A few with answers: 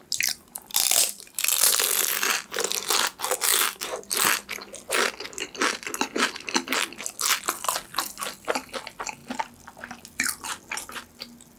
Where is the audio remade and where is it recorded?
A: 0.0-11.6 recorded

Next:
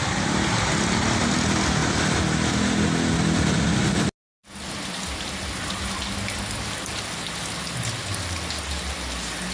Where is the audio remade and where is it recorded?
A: 0.0-9.5 recorded

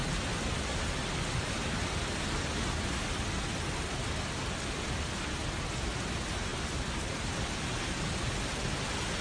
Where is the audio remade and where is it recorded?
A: 0.0-9.2 recorded

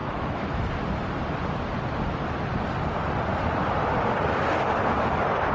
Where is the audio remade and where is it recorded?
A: 0.0-0.7 remade; 0.7-5.5 recorded

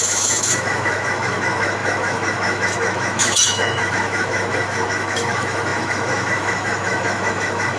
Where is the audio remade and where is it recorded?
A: 0.0-7.8 remade